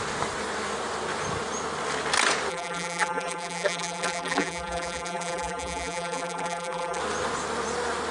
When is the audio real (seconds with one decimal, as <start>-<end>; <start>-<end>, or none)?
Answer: 0.0-2.5; 7.0-8.1